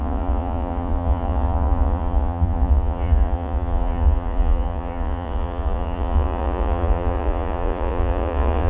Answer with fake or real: fake